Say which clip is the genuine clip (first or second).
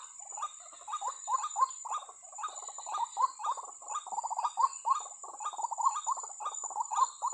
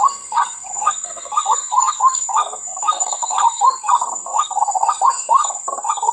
first